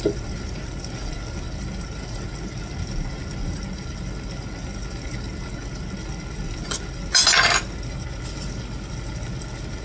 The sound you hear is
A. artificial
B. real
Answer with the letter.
B